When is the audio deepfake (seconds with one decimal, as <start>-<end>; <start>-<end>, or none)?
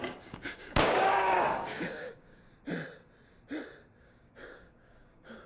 0.0-2.5; 4.0-5.5